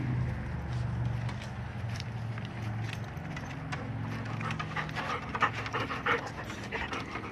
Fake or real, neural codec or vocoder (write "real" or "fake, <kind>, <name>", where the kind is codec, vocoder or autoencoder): real